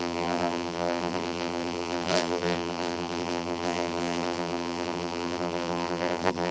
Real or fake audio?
fake